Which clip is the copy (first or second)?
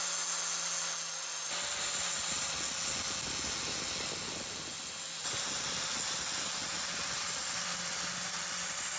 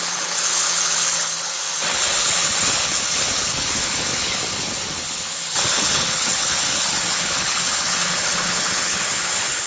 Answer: second